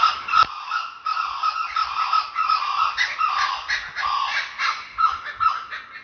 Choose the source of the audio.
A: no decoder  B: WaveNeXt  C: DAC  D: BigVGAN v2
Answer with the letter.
A